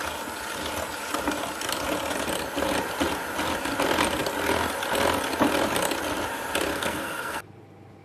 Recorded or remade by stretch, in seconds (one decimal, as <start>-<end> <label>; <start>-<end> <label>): 0.0-6.7 recorded; 6.7-7.4 remade; 7.4-8.0 recorded